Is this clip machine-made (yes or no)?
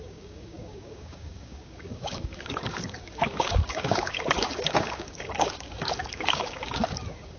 yes